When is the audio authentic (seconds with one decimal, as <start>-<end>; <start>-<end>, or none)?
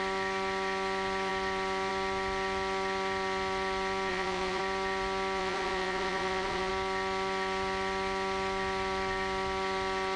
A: 0.0-4.1; 4.6-5.4; 6.7-10.2